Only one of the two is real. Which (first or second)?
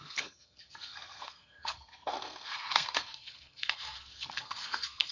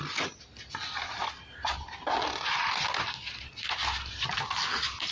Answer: second